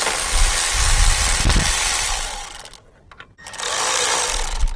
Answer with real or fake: real